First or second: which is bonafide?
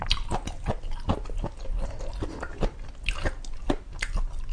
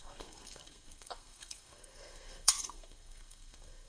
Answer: first